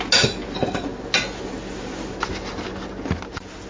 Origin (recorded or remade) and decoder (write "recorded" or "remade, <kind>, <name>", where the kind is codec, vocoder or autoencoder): recorded